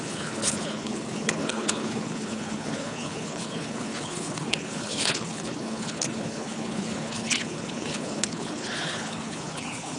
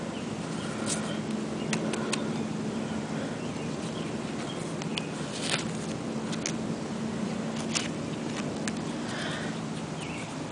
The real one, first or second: second